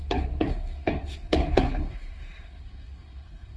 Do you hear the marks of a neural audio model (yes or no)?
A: yes